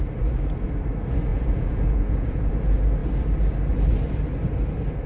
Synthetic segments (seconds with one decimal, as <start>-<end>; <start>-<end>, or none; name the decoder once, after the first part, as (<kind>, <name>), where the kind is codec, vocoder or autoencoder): 1.3-2.5 (vocoder, Vocos)

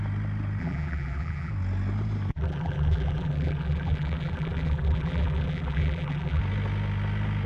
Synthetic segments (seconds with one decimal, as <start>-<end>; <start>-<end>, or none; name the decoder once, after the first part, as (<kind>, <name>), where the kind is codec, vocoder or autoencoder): 0.6-1.5 (vocoder, BigVGAN v2); 2.3-6.4

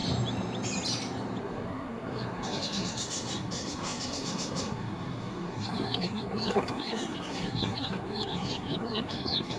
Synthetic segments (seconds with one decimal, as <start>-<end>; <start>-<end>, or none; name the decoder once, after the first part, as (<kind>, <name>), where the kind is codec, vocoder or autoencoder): 1.4-9.6 (codec, SNAC)

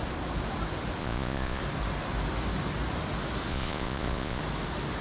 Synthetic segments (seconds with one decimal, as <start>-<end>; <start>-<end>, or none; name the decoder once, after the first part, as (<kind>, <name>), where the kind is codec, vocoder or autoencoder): 1.0-1.6 (vocoder, Vocos); 3.5-4.4